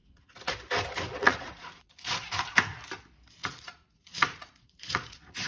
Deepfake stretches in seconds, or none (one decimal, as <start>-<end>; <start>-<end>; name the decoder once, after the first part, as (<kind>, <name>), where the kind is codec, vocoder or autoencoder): 0.0-0.5 (vocoder, Vocos); 1.2-2.1; 3.4-5.5